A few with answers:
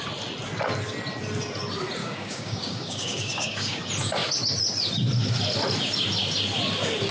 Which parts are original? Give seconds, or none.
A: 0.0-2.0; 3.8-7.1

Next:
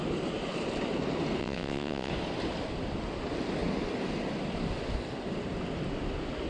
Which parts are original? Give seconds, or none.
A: 0.0-1.4; 2.1-6.5